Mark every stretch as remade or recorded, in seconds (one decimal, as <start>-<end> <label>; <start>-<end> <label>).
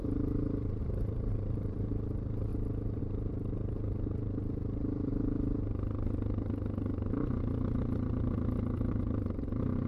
0.0-2.5 remade; 2.5-3.0 recorded; 3.0-5.1 remade; 5.1-9.9 recorded